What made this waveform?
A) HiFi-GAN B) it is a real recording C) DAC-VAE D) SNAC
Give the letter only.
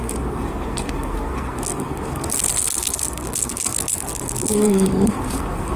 D